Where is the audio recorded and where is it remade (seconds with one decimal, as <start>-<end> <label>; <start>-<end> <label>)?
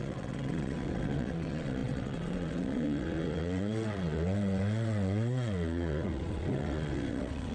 0.0-7.5 remade